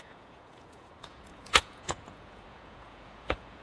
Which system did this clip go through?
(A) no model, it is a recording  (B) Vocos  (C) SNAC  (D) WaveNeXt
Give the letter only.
B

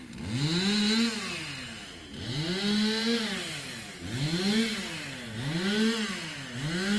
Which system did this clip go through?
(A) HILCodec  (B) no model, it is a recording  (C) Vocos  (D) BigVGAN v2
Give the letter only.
B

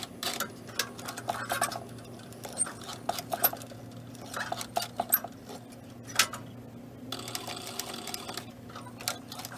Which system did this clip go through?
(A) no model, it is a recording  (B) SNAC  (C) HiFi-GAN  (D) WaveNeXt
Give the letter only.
A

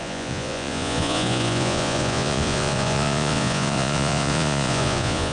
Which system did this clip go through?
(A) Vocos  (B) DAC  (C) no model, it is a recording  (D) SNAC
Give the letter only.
A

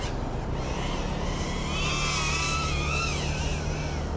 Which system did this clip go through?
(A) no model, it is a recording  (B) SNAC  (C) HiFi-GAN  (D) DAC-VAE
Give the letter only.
A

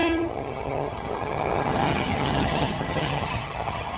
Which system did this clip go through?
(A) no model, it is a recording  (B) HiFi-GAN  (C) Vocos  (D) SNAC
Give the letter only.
B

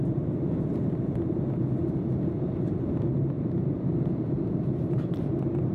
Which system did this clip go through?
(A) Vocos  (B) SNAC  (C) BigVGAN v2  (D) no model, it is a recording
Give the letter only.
C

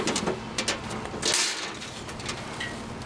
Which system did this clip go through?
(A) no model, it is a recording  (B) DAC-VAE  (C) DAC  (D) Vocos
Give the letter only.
A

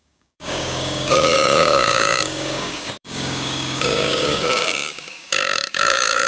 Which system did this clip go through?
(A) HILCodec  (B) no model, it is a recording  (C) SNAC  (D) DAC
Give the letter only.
D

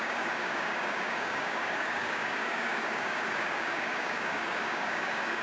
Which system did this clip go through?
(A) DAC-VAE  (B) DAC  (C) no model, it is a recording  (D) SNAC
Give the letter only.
B